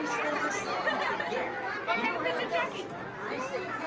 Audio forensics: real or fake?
real